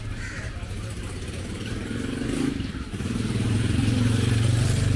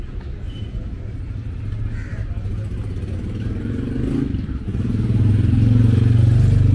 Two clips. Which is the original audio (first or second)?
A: second